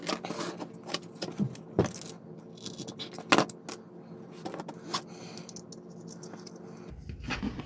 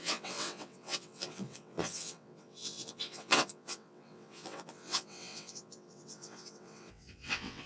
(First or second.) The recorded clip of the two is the first